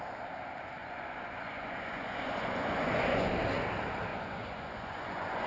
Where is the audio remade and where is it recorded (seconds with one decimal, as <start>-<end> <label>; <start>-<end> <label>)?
0.0-0.8 recorded; 0.8-3.3 remade; 3.3-4.1 recorded; 4.1-5.5 remade